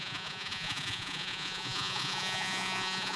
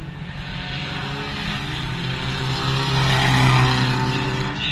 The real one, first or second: second